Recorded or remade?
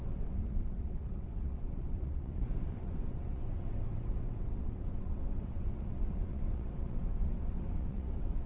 remade